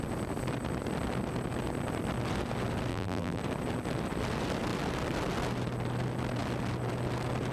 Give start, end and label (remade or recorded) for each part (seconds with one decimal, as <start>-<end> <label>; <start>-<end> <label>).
0.0-2.9 recorded; 2.9-3.4 remade; 3.4-7.5 recorded